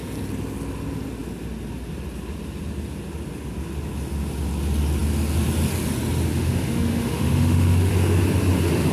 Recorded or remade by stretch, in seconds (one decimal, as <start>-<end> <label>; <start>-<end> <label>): 0.0-6.3 recorded; 6.3-7.9 remade; 7.9-8.9 recorded